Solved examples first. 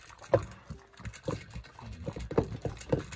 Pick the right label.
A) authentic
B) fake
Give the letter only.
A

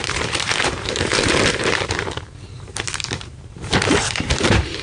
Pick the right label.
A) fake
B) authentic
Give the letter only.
A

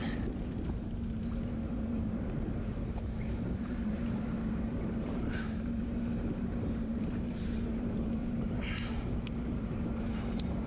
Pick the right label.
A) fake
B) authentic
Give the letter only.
A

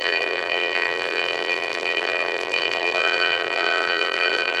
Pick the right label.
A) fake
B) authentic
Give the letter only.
A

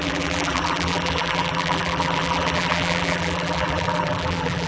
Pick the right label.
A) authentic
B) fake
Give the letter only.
B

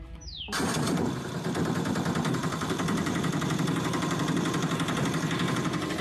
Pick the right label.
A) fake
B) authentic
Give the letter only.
A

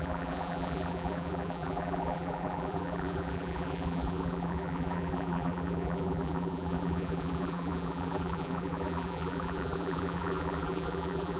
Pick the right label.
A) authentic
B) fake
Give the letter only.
B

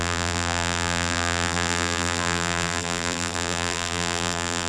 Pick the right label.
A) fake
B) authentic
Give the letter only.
A